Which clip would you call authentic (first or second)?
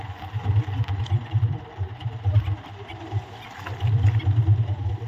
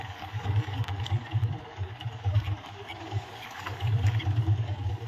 first